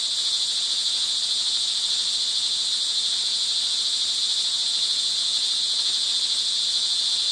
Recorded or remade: recorded